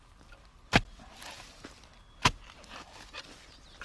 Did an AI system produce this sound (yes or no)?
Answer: no